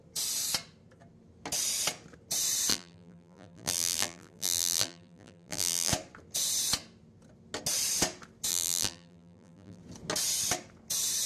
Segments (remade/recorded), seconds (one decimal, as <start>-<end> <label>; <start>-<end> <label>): 0.0-2.7 recorded; 2.7-5.9 remade; 5.9-8.5 recorded; 8.5-9.8 remade; 9.8-11.3 recorded